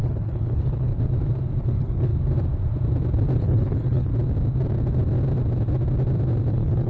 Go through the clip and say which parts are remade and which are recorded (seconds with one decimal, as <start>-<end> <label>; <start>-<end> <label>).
0.0-0.9 remade; 0.9-1.6 recorded; 1.6-2.1 remade; 2.1-3.4 recorded; 3.4-4.1 remade; 4.1-6.5 recorded; 6.5-6.9 remade